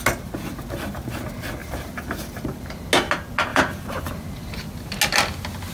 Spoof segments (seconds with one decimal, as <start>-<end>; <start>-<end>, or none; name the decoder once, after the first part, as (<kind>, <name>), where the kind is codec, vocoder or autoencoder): 1.6-2.7 (vocoder, BigVGAN v2); 3.5-4.5